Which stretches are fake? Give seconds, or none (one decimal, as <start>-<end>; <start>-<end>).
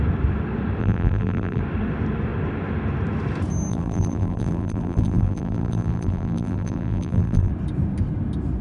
0.8-1.6; 3.7-7.5